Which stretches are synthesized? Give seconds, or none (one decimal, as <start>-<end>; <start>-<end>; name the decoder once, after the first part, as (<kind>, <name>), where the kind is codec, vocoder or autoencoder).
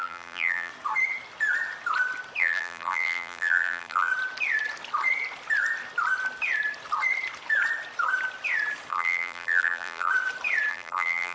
0.0-0.7 (vocoder, BigVGAN v2); 2.4-4.1; 8.9-10.1; 10.7-11.3